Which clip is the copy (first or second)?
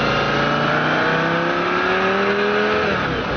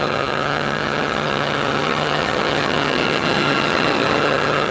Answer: second